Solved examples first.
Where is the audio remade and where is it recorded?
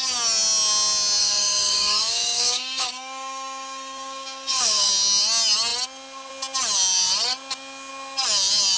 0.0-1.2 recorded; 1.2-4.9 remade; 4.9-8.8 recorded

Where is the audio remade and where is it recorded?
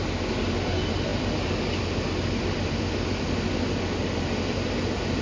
0.0-5.2 recorded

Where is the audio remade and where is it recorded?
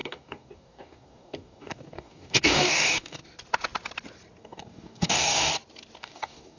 0.0-3.2 remade; 3.2-4.4 recorded; 4.4-5.5 remade; 5.5-6.0 recorded; 6.0-6.6 remade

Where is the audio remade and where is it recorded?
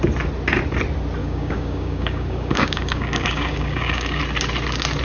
0.0-1.2 recorded; 1.2-4.2 remade; 4.2-5.0 recorded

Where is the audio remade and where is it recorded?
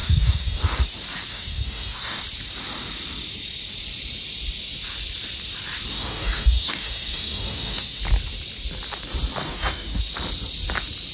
0.0-0.6 remade; 0.6-1.3 recorded; 1.3-2.2 remade; 2.2-5.9 recorded; 5.9-8.0 remade; 8.0-9.4 recorded; 9.4-10.0 remade; 10.0-11.1 recorded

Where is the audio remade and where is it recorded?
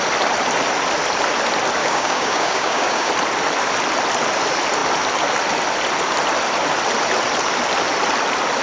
0.0-1.8 recorded; 1.8-3.1 remade; 3.1-8.6 recorded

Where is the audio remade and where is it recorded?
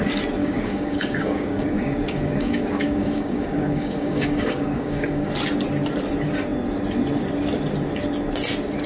0.0-0.4 recorded; 0.4-5.3 remade; 5.3-8.9 recorded